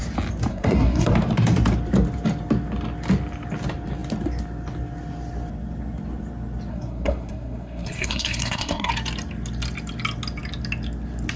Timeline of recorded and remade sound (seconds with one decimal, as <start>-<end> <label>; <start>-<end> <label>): 0.0-0.5 recorded; 0.5-1.1 remade; 1.1-6.7 recorded; 6.7-8.9 remade; 8.9-11.4 recorded